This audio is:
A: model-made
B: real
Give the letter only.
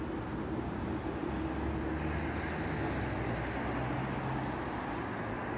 B